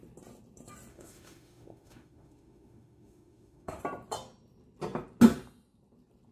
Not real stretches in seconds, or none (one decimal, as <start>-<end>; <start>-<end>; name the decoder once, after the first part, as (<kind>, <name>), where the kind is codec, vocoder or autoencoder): 0.9-3.8 (autoencoder, DAC-VAE)